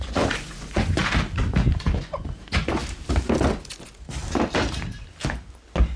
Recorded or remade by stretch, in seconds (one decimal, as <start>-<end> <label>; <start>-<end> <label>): 0.0-1.0 remade; 1.0-1.8 recorded; 1.8-2.8 remade; 2.8-3.6 recorded; 3.6-4.2 remade; 4.2-6.0 recorded